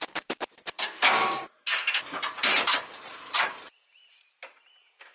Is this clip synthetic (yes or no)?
yes